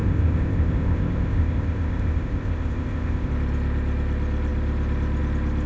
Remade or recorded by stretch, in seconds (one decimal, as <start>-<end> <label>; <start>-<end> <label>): 0.0-3.3 remade; 3.3-5.7 recorded